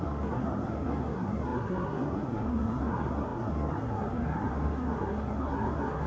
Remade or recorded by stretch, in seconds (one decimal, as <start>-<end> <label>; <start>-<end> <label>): 0.0-6.1 remade